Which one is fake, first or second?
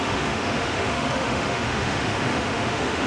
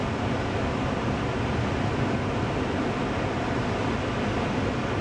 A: first